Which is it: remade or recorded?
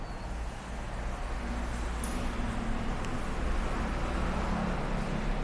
recorded